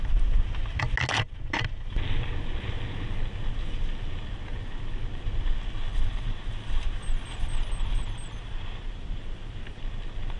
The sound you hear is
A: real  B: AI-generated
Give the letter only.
A